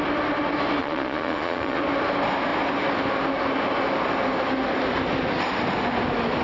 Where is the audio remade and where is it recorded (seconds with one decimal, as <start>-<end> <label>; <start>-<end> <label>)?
0.0-0.8 recorded; 0.8-1.8 remade; 1.8-6.4 recorded